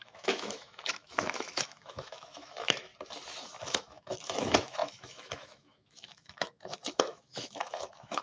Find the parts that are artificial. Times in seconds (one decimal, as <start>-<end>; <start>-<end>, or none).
0.0-2.9; 3.6-8.2